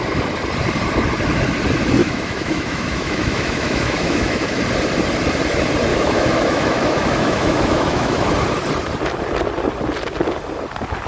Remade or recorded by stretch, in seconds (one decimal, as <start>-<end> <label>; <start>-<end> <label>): 0.0-2.0 recorded; 2.0-4.6 remade; 4.6-5.9 recorded; 5.9-8.3 remade; 8.3-11.1 recorded